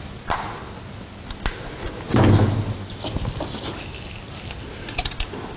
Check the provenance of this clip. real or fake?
real